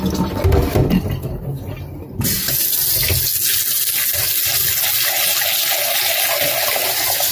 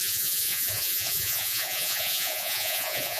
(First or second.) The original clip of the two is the first